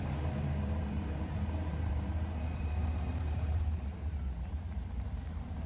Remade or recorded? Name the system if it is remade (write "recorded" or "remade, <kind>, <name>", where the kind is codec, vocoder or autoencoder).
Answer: remade, vocoder, BigVGAN v2